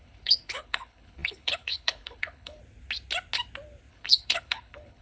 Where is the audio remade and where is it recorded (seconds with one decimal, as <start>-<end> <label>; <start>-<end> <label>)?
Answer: 0.0-2.6 remade; 2.6-3.9 recorded; 3.9-5.0 remade